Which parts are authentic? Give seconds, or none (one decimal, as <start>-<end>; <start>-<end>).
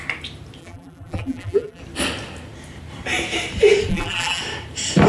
0.0-0.6; 1.8-3.9; 4.4-5.1